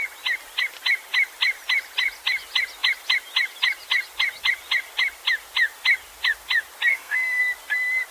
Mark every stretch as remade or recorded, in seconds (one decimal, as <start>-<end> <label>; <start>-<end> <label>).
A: 0.0-6.9 recorded; 6.9-7.4 remade; 7.4-8.1 recorded